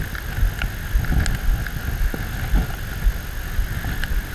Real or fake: real